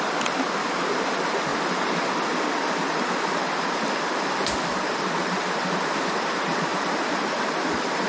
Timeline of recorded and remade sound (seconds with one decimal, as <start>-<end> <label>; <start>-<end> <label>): 0.0-4.7 recorded; 4.7-6.0 remade; 6.0-6.7 recorded; 6.7-8.1 remade